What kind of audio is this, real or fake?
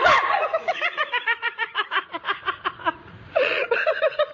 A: fake